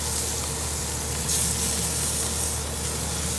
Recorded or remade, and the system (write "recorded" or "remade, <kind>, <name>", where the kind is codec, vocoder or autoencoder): recorded